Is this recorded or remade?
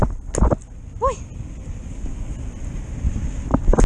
recorded